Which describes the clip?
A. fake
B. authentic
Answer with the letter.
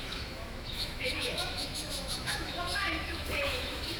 A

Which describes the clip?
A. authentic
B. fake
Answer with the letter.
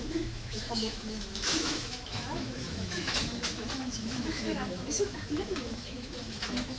B